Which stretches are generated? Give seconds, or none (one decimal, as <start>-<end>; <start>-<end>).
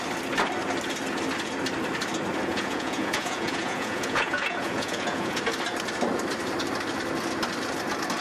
2.5-5.4